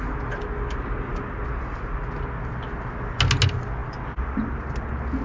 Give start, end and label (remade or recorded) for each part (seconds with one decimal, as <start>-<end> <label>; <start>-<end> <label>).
0.0-5.2 recorded